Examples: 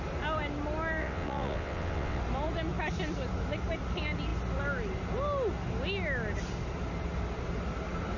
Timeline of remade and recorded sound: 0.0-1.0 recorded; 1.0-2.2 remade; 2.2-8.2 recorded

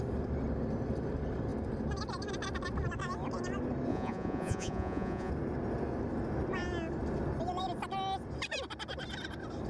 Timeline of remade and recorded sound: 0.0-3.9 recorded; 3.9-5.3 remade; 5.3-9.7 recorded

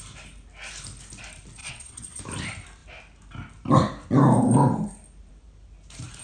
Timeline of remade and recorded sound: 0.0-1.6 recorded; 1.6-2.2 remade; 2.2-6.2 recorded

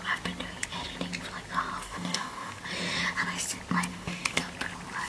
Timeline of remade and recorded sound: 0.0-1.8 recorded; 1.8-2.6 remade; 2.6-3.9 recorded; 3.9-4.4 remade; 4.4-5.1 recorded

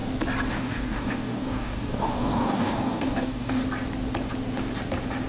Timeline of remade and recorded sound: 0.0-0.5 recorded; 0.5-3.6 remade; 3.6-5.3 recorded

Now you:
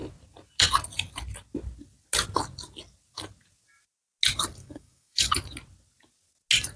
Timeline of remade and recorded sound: 0.0-4.6 recorded; 4.6-5.3 remade; 5.3-6.8 recorded